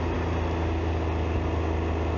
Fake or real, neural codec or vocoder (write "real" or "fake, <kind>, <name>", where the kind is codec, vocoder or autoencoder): real